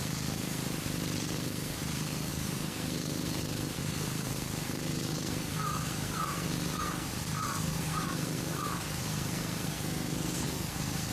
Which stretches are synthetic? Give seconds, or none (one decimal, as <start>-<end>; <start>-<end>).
0.0-0.6; 1.2-11.1